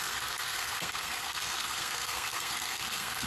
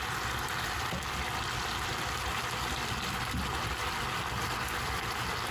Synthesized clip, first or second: first